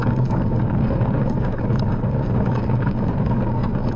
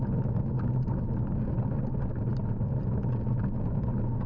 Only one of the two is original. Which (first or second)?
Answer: second